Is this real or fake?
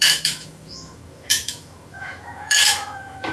fake